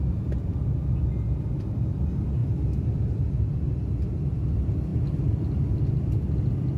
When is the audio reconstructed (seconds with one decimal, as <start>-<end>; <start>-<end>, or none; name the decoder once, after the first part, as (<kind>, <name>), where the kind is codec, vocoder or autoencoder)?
none